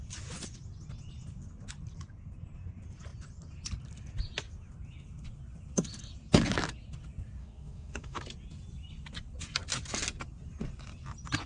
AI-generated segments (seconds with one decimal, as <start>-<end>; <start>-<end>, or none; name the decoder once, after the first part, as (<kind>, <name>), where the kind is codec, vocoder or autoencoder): 7.4-8.2 (autoencoder, DAC-VAE)